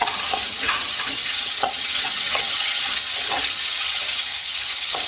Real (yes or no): no